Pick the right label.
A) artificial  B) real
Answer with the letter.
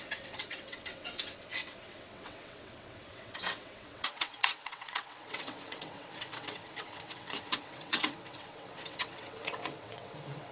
A